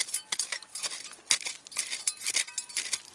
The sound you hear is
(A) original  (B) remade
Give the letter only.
A